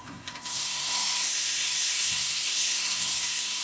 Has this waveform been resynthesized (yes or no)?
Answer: yes